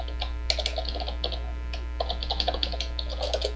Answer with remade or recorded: recorded